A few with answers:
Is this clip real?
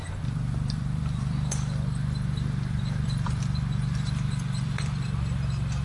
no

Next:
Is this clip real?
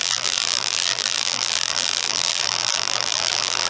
no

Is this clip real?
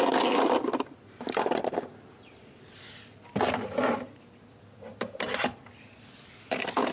no